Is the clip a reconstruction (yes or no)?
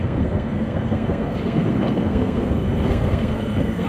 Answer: yes